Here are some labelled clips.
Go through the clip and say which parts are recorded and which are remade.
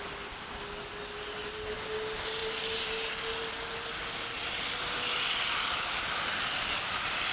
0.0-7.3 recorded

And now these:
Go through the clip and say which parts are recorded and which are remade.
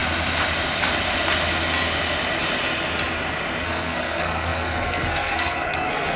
0.0-3.6 recorded; 3.6-6.2 remade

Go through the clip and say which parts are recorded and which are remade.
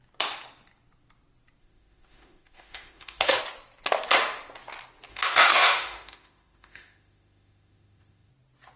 0.0-1.6 recorded; 1.6-3.4 remade; 3.4-5.1 recorded; 5.1-8.3 remade; 8.3-8.8 recorded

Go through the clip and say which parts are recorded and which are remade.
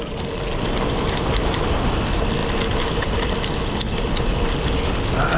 0.0-5.4 recorded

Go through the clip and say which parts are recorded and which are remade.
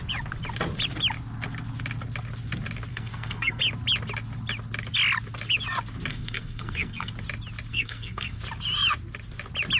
0.0-2.9 recorded; 2.9-3.6 remade; 3.6-6.1 recorded; 6.1-7.1 remade; 7.1-7.7 recorded; 7.7-8.4 remade; 8.4-9.8 recorded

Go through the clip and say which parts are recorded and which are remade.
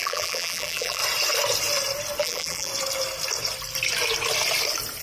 0.0-1.0 remade; 1.0-2.2 recorded; 2.2-2.7 remade; 2.7-5.0 recorded